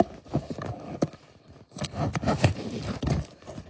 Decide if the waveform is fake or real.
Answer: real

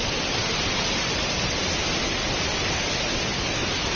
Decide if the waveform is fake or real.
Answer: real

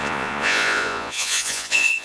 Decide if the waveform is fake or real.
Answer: fake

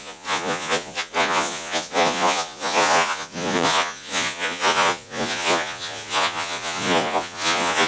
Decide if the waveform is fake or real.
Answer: fake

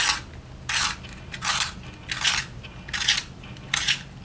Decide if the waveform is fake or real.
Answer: real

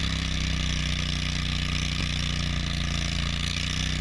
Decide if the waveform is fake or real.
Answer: real